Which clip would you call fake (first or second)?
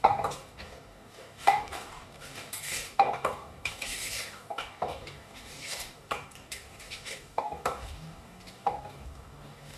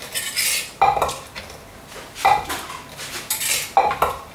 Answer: first